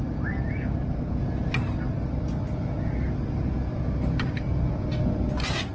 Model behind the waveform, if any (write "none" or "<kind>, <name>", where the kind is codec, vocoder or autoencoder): none